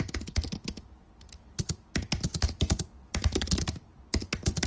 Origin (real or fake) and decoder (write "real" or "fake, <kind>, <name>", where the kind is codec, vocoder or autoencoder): real